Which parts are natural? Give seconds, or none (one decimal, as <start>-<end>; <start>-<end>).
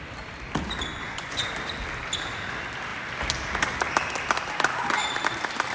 0.0-0.9; 1.5-5.7